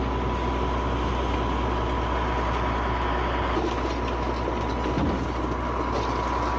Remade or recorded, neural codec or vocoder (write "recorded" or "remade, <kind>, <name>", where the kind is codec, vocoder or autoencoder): recorded